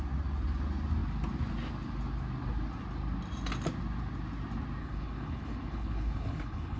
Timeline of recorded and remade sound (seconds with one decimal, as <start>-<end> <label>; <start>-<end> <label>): 0.0-4.8 recorded; 4.8-6.8 remade